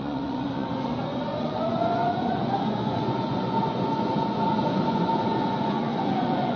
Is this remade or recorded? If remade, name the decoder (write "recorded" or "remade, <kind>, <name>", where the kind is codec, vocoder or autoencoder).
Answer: remade, vocoder, Vocos